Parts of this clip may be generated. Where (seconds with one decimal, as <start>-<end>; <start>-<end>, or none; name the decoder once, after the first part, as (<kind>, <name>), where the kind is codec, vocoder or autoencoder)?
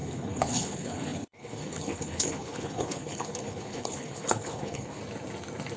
0.0-5.0 (codec, HILCodec)